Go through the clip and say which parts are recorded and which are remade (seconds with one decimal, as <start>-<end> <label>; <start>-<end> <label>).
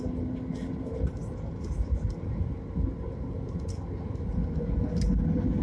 0.0-5.6 recorded